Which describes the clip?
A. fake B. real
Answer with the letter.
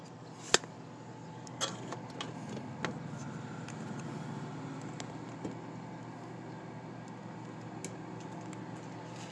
B